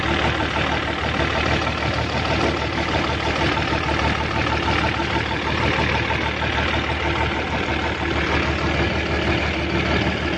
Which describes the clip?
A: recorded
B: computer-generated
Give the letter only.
A